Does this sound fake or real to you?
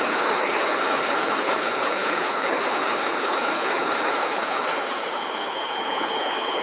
fake